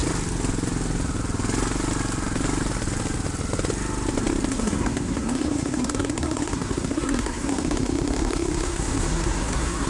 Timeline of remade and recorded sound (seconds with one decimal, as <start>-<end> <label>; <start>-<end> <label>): 0.0-4.5 recorded; 4.5-9.9 remade